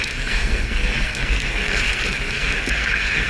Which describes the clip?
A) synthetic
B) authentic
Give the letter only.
A